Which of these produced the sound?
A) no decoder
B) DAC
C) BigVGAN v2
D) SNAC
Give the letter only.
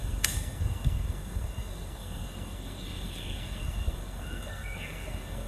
D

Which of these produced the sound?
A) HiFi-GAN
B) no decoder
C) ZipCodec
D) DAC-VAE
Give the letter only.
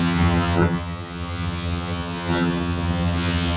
A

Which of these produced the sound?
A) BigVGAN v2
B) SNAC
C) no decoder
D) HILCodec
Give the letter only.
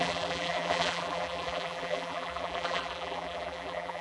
A